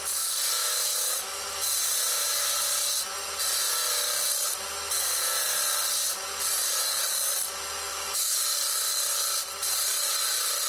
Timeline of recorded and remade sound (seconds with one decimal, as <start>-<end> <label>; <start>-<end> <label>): 0.0-0.6 recorded; 0.6-1.6 remade; 1.6-7.9 recorded; 7.9-8.4 remade; 8.4-10.7 recorded